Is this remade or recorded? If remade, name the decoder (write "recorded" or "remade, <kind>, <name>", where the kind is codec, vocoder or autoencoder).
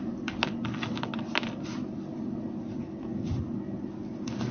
recorded